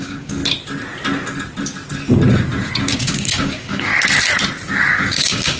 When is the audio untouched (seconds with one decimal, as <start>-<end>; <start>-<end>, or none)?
0.4-2.8; 3.9-4.9